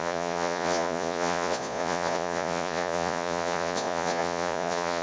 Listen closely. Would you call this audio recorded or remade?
remade